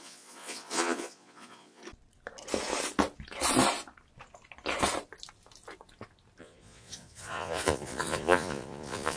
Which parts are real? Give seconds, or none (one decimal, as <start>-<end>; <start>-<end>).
1.8-6.4